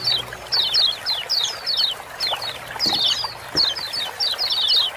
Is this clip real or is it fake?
real